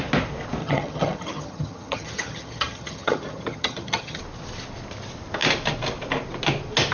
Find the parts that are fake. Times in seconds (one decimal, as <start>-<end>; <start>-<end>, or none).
0.6-4.2